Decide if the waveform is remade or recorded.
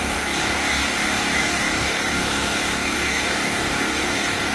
remade